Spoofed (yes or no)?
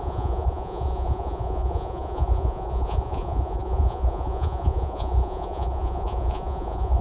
yes